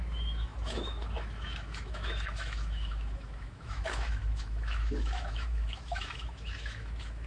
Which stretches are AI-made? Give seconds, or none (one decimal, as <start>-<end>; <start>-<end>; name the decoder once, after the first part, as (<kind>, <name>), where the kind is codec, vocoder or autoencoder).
0.0-7.3 (autoencoder, DAC-VAE)